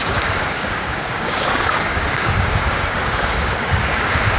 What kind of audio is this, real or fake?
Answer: fake